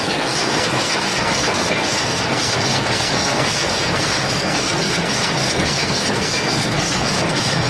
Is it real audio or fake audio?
fake